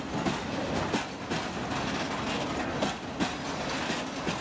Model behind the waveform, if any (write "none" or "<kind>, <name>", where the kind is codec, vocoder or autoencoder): none